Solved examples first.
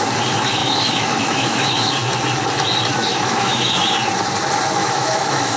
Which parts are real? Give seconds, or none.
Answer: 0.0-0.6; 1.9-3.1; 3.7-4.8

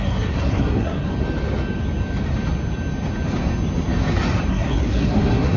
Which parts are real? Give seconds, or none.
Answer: 1.1-4.5